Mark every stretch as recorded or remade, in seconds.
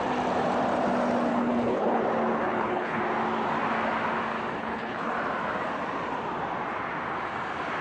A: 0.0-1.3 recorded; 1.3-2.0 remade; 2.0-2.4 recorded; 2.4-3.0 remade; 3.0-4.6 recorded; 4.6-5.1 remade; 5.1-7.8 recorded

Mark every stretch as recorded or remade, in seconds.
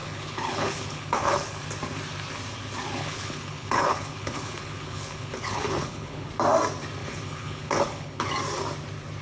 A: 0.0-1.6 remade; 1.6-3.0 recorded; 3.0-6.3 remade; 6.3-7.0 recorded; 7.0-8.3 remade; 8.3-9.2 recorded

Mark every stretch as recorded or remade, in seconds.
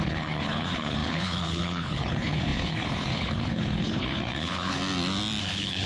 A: 0.0-4.8 remade; 4.8-5.4 recorded; 5.4-5.9 remade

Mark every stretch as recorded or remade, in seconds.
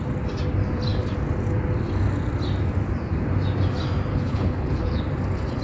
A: 0.0-4.1 recorded; 4.1-5.0 remade; 5.0-5.6 recorded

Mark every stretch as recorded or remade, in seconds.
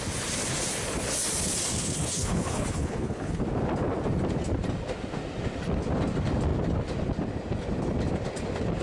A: 0.0-1.8 recorded; 1.8-3.4 remade; 3.4-8.8 recorded